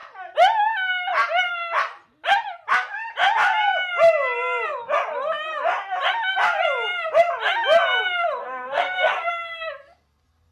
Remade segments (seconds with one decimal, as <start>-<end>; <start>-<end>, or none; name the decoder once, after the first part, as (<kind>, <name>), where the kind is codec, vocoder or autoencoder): 8.4-9.3 (codec, SNAC)